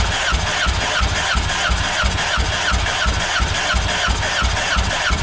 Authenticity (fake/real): real